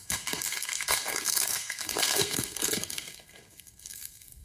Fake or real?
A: fake